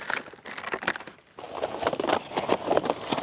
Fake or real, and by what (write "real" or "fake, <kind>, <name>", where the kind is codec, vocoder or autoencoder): real